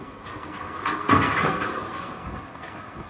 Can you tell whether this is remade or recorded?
remade